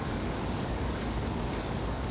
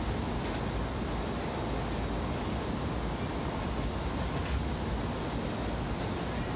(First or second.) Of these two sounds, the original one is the second